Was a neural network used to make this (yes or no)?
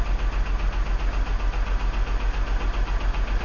no